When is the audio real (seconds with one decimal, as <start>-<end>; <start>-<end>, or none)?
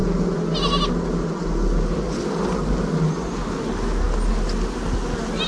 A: 0.0-5.5